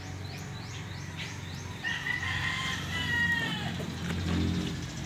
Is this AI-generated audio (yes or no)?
yes